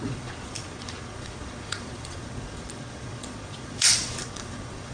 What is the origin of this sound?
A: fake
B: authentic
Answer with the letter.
A